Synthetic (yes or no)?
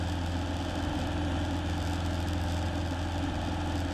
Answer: no